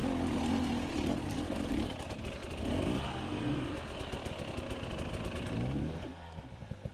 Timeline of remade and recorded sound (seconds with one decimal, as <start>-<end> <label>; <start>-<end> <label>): 0.0-6.9 recorded